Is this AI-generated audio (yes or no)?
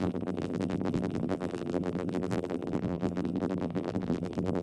yes